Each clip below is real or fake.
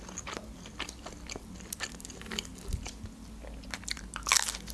real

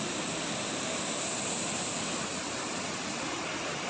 real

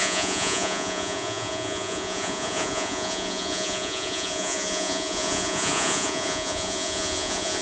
fake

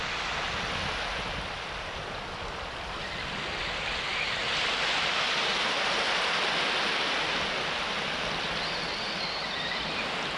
real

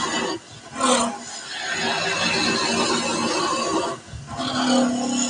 real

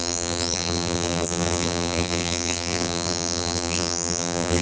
fake